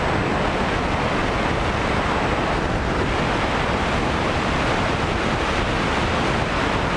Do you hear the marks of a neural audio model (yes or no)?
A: no